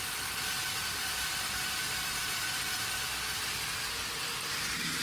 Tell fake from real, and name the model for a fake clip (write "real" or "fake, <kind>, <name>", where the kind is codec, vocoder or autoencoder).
fake, vocoder, BigVGAN v2